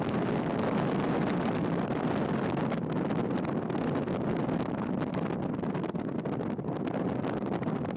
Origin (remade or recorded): recorded